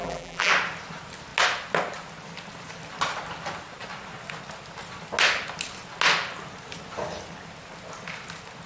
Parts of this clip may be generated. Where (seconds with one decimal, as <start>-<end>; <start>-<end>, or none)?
0.0-0.5